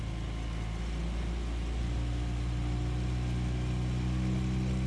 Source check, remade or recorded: recorded